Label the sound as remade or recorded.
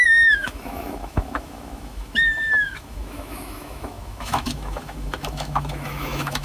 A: remade